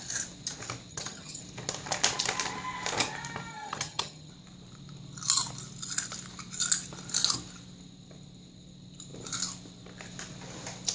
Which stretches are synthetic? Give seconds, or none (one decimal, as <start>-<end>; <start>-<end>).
0.9-1.4; 3.5-4.3